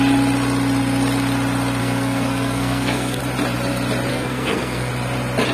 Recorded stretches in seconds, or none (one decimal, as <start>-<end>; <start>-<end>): 0.0-1.8; 3.2-4.1; 4.9-5.5

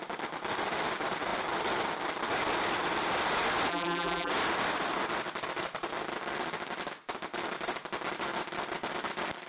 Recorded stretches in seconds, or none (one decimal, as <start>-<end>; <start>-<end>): 0.0-3.7; 4.3-9.5